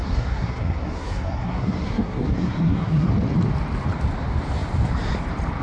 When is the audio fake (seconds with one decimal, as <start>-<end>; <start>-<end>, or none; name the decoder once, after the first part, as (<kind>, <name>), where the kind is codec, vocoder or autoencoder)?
0.0-3.1 (codec, SNAC)